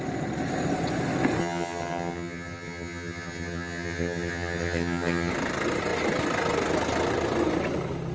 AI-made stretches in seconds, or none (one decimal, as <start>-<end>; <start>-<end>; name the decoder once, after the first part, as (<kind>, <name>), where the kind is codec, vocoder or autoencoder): 1.4-5.3 (vocoder, HiFi-GAN)